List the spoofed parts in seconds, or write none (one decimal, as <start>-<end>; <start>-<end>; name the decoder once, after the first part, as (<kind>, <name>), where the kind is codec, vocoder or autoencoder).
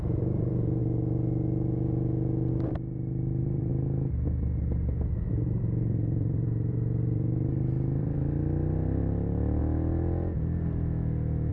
0.0-0.8 (vocoder, BigVGAN v2); 2.5-3.7; 5.3-9.6